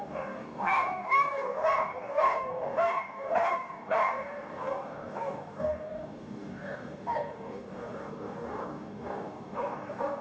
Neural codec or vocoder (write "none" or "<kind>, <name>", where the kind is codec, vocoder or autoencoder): codec, DAC